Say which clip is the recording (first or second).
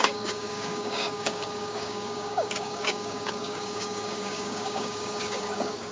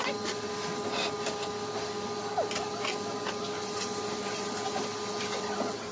second